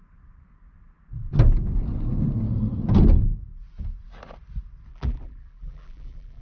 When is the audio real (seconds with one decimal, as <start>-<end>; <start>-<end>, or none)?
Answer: 0.0-4.9